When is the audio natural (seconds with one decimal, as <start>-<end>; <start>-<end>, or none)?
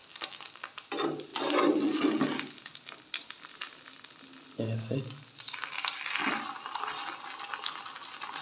0.0-8.4